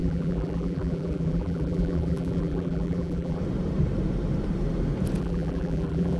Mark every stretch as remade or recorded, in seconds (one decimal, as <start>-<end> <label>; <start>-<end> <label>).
0.0-3.4 remade; 3.4-5.2 recorded; 5.2-6.2 remade